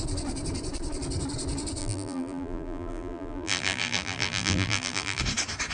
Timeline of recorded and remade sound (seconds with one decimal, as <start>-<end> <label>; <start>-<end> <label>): 0.0-1.8 recorded; 1.8-5.2 remade; 5.2-5.7 recorded